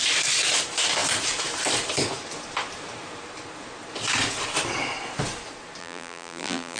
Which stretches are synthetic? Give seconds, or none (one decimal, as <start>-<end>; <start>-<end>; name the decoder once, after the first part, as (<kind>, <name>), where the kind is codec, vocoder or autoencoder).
5.8-6.8 (vocoder, BigVGAN v2)

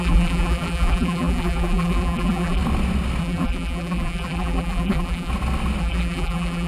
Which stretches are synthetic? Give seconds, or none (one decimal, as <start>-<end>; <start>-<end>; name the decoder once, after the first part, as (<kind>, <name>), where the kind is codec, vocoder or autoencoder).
0.0-2.6 (vocoder, BigVGAN v2); 3.2-5.3; 5.8-6.7

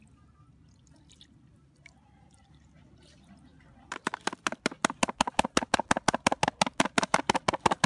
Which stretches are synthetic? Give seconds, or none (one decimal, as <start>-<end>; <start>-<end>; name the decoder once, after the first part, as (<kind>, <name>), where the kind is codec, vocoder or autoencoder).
none

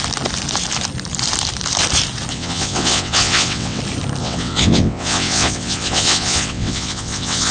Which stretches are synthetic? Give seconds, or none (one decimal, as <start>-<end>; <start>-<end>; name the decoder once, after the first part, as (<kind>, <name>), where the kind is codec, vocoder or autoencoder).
2.3-3.8 (vocoder, WaveNeXt); 4.2-7.5

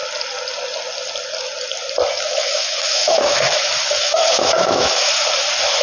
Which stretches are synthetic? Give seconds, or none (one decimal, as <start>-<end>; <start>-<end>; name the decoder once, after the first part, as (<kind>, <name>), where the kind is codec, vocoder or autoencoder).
2.3-3.4 (autoencoder, DAC-VAE); 4.0-5.1

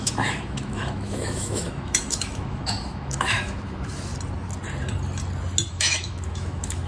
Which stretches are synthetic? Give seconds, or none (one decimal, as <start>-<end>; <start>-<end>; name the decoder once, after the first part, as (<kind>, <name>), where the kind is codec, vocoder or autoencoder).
0.0-4.1 (autoencoder, DAC-VAE); 5.7-6.9

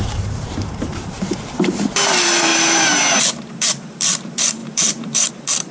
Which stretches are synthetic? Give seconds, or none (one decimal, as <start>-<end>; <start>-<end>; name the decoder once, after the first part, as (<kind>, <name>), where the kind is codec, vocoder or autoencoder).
0.0-2.5 (vocoder, BigVGAN v2); 3.2-5.7

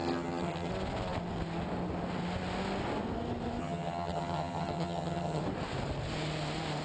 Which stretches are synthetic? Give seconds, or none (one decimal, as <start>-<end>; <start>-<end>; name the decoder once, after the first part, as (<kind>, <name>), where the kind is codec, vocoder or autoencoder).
0.0-0.7 (vocoder, HiFi-GAN); 3.6-5.4